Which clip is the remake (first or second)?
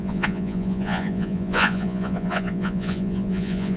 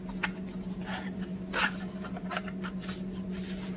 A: first